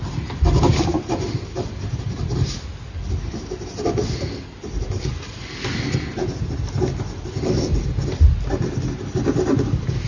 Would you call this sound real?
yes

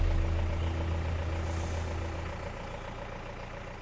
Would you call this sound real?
yes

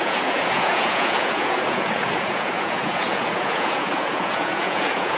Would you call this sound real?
no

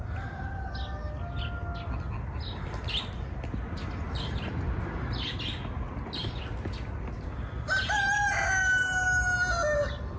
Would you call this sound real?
yes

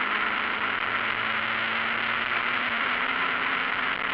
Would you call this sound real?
yes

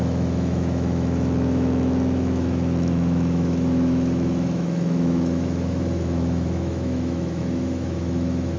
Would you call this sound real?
no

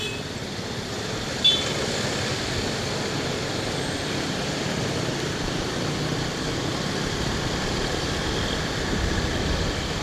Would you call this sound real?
yes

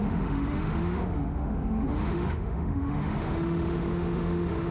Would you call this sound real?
no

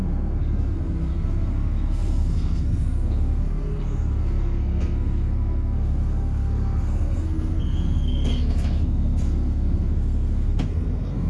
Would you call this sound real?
no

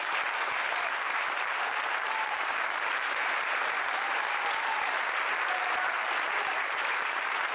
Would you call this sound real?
no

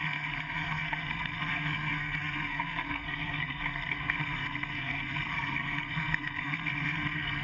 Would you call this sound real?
no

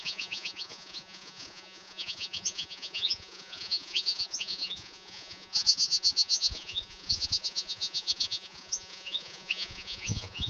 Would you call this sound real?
no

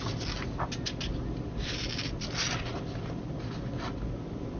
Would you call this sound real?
yes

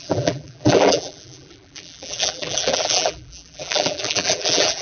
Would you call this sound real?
no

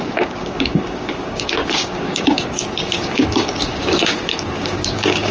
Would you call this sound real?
no